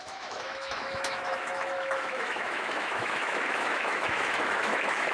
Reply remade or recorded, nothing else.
remade